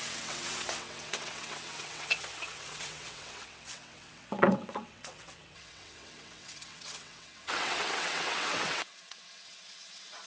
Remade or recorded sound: remade